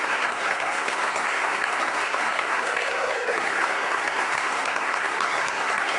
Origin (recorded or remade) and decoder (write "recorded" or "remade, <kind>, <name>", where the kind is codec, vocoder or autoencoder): remade, codec, SNAC